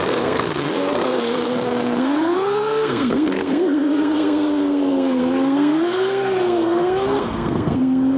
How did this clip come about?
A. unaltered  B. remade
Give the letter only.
B